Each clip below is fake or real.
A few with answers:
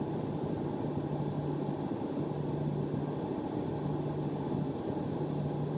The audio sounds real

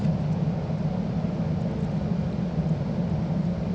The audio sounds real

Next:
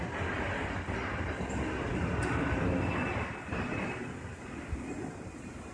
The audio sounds real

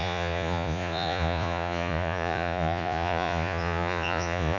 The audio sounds fake